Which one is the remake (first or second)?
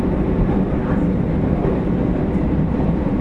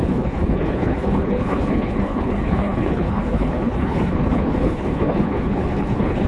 second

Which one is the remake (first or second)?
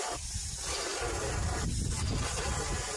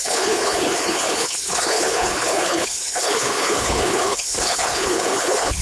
second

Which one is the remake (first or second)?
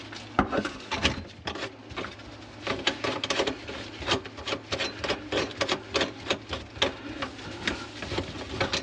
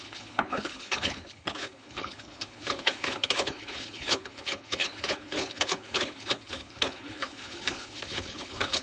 second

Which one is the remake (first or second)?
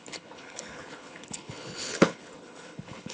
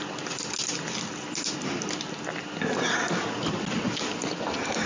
first